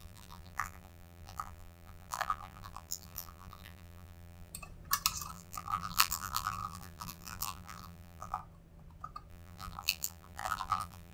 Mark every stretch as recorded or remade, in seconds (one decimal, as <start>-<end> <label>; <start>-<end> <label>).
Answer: 0.0-4.5 remade; 4.5-5.3 recorded; 5.3-8.4 remade; 8.4-9.3 recorded; 9.3-11.1 remade